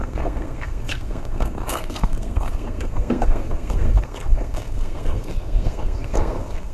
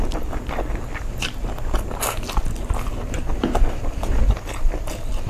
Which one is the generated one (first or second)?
first